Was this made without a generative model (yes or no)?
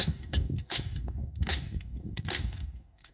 no